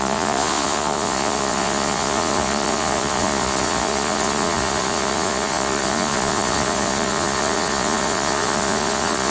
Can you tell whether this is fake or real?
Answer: fake